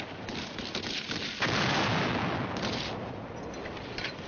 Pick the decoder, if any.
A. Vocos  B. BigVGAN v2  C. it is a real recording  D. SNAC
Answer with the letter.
C